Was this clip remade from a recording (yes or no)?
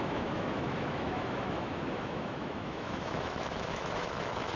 yes